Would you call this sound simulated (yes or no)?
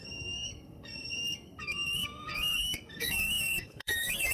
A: yes